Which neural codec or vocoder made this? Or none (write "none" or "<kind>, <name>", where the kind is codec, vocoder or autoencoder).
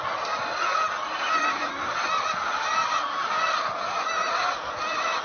none